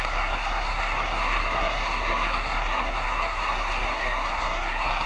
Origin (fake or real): fake